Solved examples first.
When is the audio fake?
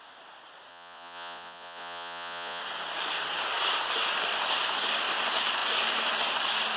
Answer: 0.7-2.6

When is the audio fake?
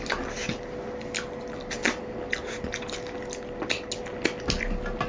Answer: none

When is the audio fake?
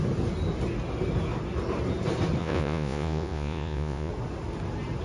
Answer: 2.4-4.1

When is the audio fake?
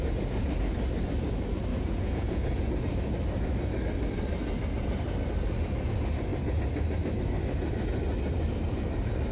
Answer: 1.7-2.7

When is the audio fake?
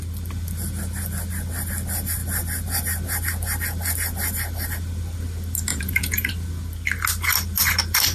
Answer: 5.7-6.3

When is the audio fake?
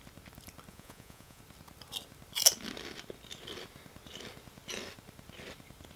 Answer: 0.7-1.4